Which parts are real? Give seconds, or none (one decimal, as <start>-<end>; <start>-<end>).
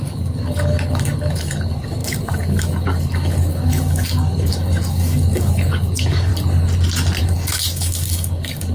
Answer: 6.3-7.2